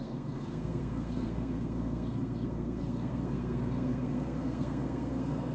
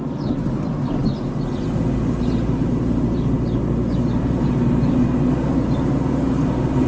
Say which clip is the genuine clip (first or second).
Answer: second